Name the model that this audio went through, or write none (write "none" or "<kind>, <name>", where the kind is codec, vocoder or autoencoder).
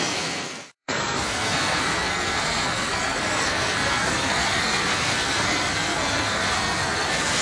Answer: codec, SNAC